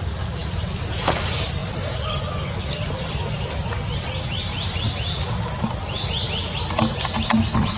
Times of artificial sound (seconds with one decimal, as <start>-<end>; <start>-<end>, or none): none